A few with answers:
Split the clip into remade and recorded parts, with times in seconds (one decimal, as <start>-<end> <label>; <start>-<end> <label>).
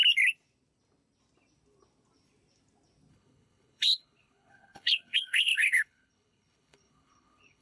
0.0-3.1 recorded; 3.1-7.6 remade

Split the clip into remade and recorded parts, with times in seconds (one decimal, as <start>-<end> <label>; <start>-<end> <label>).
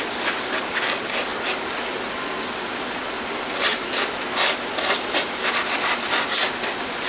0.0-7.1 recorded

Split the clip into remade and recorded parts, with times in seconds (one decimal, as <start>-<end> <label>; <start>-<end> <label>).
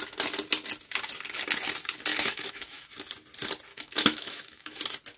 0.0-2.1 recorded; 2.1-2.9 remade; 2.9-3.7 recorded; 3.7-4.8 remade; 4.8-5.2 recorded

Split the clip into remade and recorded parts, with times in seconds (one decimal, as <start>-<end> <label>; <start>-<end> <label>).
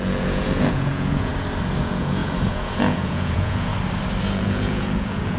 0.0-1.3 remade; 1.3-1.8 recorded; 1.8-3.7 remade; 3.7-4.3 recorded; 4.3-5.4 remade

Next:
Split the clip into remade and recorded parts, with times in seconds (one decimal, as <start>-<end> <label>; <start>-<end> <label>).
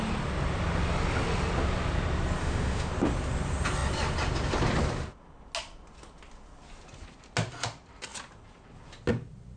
0.0-2.4 recorded; 2.4-2.9 remade; 2.9-9.6 recorded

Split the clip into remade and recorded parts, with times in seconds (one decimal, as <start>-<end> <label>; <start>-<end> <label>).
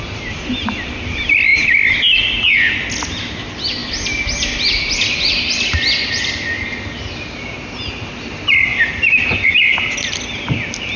0.0-11.0 recorded